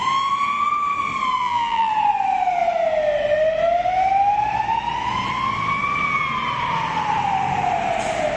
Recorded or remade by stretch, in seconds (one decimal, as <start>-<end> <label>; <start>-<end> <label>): 0.0-1.4 recorded; 1.4-1.9 remade; 1.9-8.4 recorded